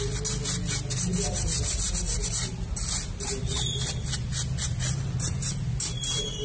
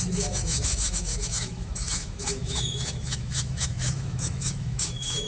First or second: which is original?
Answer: first